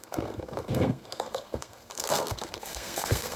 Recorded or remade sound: remade